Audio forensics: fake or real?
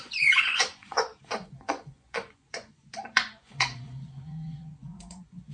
fake